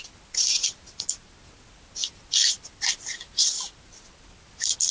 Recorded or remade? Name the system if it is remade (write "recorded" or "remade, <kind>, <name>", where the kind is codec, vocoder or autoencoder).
recorded